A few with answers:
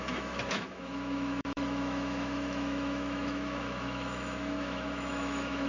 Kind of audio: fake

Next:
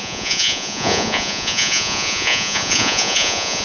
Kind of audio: fake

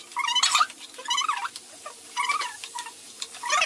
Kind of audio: real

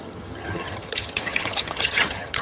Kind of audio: fake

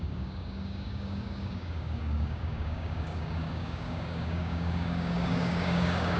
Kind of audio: fake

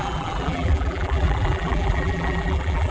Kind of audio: fake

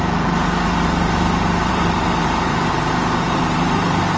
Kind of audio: fake